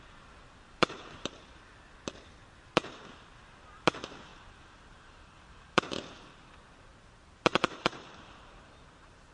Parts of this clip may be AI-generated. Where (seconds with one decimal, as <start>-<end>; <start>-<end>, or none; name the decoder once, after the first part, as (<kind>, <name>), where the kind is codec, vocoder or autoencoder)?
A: 0.4-1.7 (vocoder, BigVGAN v2); 4.3-5.8; 6.9-9.3